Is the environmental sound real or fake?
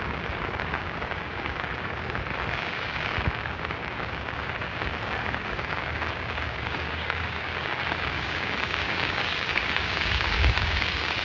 fake